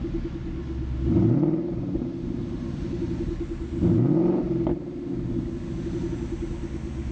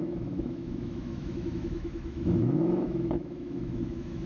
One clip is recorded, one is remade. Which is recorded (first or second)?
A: first